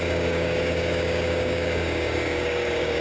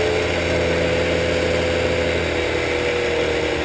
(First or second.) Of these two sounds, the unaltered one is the second